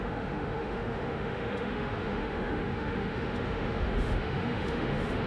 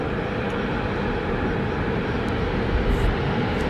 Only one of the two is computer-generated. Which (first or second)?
first